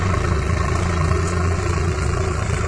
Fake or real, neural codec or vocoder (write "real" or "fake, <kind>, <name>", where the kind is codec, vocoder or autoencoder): fake, vocoder, Vocos